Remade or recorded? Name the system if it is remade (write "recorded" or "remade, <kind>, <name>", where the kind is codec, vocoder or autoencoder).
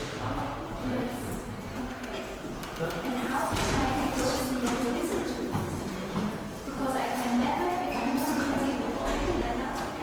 remade, vocoder, BigVGAN v2